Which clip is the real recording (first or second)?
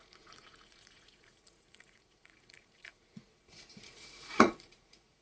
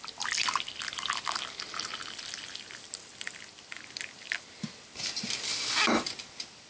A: second